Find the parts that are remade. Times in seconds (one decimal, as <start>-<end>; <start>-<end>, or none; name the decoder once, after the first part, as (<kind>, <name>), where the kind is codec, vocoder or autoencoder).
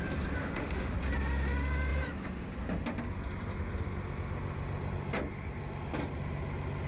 0.4-0.9 (autoencoder, DAC-VAE)